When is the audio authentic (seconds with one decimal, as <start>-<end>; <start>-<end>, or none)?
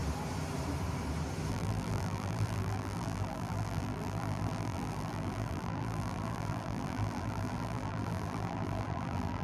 0.0-1.5